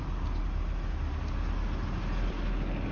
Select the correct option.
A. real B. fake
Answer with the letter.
A